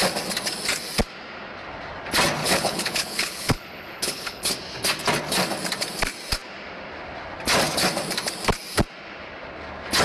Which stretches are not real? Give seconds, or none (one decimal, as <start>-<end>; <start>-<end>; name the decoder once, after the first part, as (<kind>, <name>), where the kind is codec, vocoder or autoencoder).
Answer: 2.4-4.5 (codec, HILCodec)